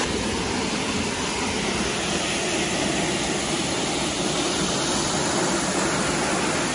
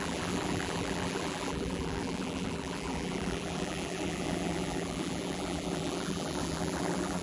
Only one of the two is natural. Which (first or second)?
first